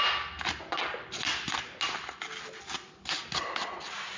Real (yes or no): yes